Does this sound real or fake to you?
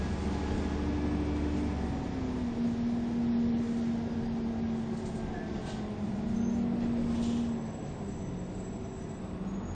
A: real